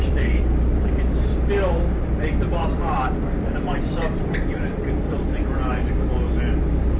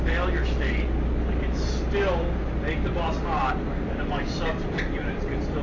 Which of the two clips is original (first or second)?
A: second